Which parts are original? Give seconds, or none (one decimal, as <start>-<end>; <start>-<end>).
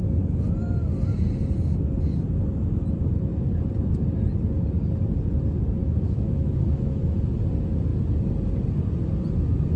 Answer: 0.0-5.8; 7.2-9.8